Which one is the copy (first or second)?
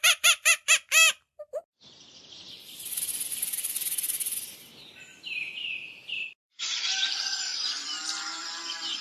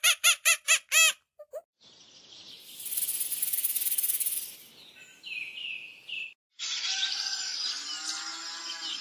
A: first